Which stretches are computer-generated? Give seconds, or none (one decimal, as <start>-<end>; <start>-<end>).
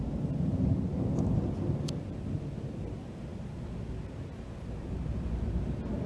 none